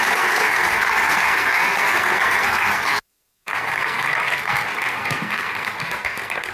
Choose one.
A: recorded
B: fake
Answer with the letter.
B